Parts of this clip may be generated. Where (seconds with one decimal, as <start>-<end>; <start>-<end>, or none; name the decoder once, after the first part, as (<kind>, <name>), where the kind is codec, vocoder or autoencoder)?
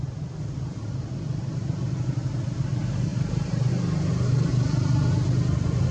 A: 3.1-3.7 (vocoder, BigVGAN v2)